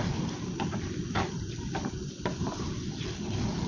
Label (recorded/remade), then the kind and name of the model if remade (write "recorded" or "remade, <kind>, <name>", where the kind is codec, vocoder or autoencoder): recorded